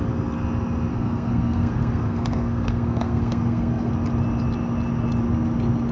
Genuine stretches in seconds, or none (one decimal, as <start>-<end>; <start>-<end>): 0.0-0.9; 3.9-5.9

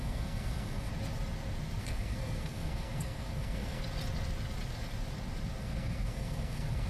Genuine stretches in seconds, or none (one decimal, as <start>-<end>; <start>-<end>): 0.9-1.8; 3.8-5.6